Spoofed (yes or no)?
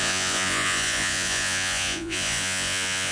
yes